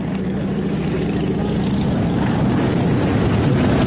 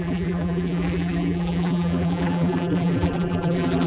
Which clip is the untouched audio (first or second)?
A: first